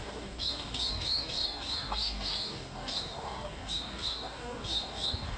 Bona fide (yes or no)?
no